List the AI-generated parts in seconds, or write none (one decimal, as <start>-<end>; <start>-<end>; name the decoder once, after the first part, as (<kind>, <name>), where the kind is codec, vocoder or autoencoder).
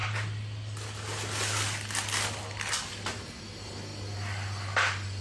none